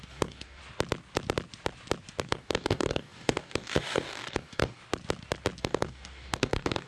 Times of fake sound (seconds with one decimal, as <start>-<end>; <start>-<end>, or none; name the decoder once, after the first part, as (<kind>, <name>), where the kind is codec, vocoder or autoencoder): 0.0-0.6 (codec, DAC); 2.2-4.8; 5.6-6.9